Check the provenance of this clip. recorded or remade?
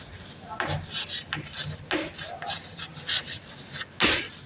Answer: recorded